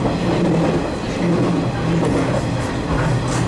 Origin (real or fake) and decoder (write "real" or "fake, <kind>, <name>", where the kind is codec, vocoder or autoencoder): real